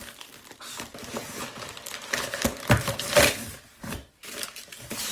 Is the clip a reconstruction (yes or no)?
yes